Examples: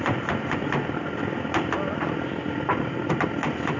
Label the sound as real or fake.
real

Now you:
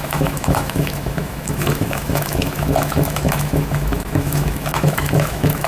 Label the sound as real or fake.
fake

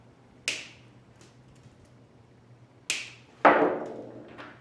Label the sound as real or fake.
real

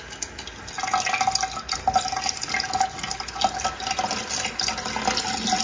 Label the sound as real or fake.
real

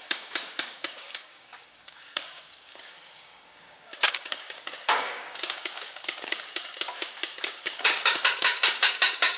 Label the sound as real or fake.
fake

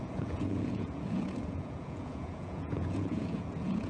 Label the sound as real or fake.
fake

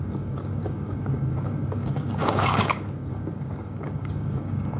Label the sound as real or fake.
fake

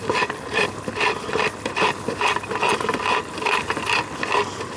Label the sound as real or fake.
real